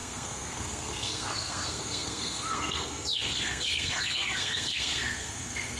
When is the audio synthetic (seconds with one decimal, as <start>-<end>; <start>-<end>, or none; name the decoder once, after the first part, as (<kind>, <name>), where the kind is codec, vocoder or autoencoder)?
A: 0.0-5.8 (codec, SNAC)